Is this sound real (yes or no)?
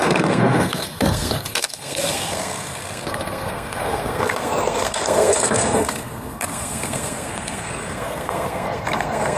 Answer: no